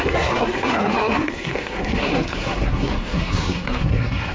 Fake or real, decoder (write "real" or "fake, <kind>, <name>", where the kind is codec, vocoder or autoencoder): fake, codec, SNAC